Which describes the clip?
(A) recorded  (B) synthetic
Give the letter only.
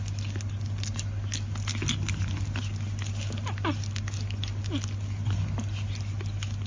A